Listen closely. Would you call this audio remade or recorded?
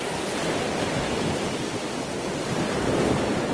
remade